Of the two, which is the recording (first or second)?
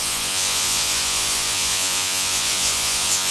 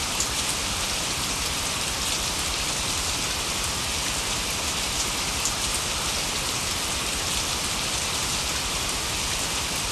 second